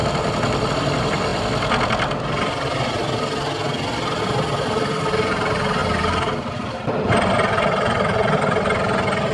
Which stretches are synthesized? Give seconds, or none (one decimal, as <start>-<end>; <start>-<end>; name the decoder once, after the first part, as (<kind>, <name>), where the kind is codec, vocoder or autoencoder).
0.0-9.3 (vocoder, BigVGAN v2)